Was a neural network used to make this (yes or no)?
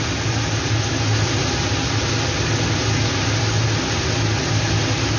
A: no